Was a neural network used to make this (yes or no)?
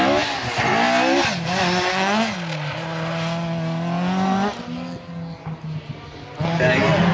no